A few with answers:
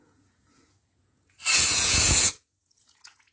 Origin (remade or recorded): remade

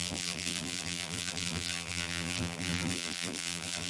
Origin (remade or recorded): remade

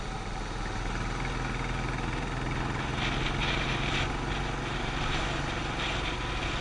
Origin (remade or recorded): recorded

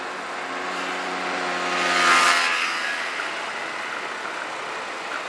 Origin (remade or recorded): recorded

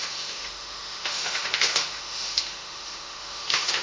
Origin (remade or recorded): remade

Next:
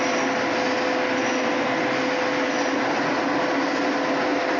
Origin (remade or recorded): recorded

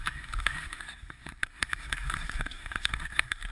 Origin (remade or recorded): remade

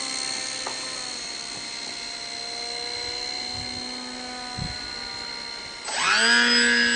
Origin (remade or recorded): recorded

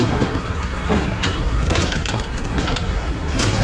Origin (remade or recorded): remade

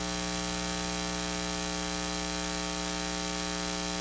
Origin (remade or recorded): recorded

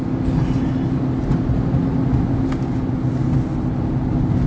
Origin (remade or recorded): recorded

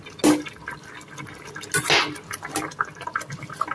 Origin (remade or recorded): recorded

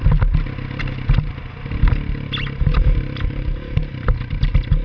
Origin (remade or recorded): recorded